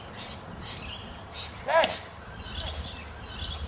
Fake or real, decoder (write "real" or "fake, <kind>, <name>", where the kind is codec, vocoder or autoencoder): real